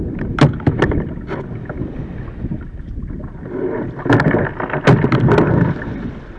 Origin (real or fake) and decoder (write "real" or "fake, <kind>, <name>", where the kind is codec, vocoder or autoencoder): real